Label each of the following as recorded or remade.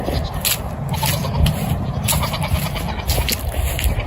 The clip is recorded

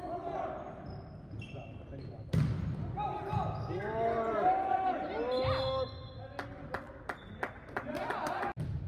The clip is recorded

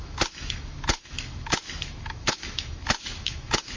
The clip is remade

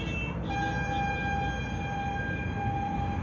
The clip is recorded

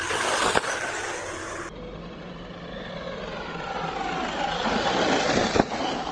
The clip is recorded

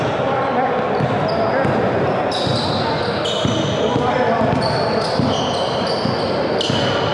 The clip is recorded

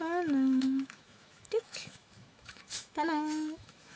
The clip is remade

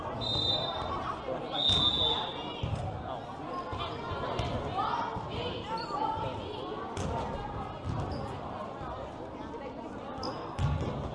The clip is recorded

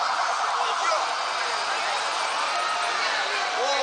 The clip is recorded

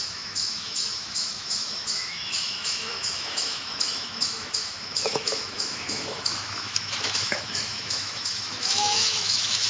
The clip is remade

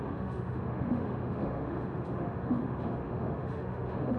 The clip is remade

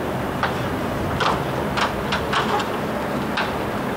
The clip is recorded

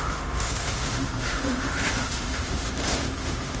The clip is remade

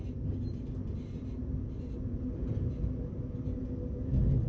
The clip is recorded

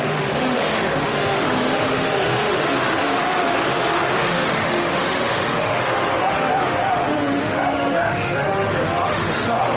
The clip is remade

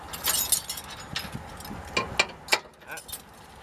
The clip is recorded